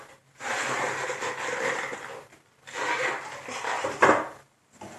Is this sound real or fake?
real